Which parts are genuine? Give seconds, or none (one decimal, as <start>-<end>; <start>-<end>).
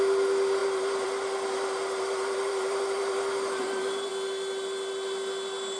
0.0-0.6; 4.1-5.8